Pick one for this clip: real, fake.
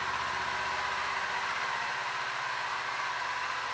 real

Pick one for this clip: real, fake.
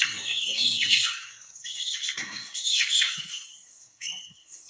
fake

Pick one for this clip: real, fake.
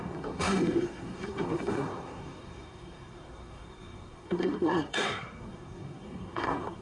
fake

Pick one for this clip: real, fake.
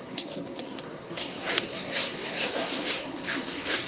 fake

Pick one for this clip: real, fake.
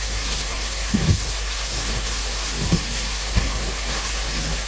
fake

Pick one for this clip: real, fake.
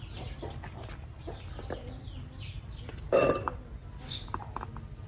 real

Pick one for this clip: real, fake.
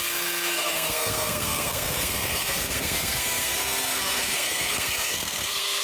fake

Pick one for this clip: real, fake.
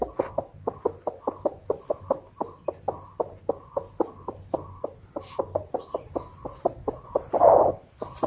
real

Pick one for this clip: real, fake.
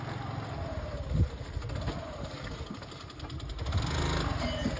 real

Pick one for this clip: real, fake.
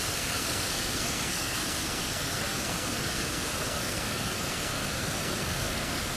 fake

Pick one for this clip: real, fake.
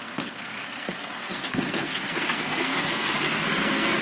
fake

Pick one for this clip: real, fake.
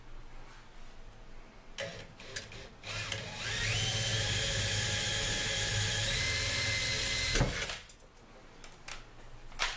real